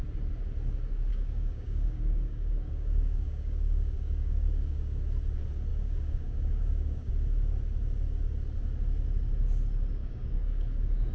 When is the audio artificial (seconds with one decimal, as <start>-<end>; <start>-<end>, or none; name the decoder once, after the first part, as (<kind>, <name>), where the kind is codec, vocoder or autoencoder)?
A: 1.1-5.0 (codec, DAC); 5.7-7.1; 10.0-11.1